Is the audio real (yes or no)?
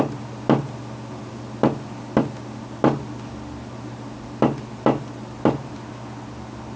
yes